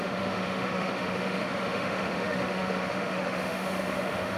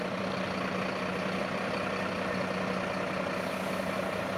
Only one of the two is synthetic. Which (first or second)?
first